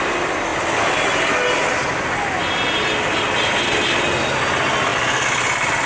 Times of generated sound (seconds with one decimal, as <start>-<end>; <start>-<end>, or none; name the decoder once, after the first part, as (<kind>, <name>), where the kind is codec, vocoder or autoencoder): none